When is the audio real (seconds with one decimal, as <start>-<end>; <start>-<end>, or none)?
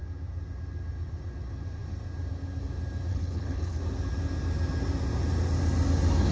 0.0-3.1; 3.8-6.3